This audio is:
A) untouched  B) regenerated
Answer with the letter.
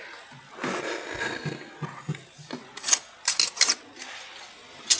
A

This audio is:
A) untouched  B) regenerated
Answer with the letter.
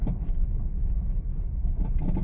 A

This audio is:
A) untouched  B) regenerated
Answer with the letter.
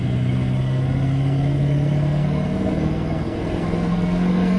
B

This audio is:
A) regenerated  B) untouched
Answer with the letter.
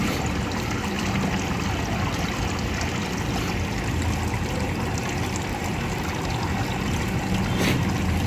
B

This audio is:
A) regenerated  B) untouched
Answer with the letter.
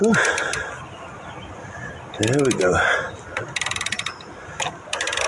B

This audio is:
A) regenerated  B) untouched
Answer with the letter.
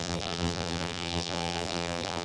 A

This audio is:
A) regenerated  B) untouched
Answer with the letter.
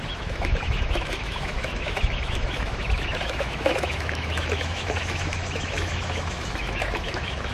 A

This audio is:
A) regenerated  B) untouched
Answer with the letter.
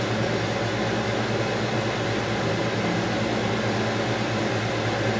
B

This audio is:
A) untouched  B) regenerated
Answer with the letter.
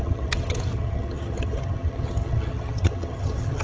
B